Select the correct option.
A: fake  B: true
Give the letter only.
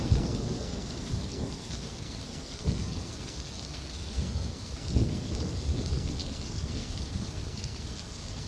A